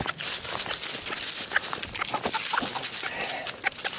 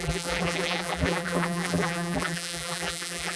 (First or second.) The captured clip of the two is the first